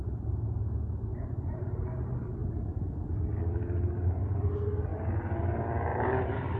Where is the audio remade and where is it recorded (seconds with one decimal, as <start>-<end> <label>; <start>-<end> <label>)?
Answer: 0.0-1.1 recorded; 1.1-1.7 remade; 1.7-5.9 recorded; 5.9-6.6 remade